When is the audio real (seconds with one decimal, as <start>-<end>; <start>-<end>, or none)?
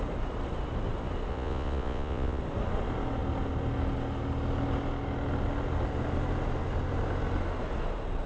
0.0-1.3; 2.4-8.3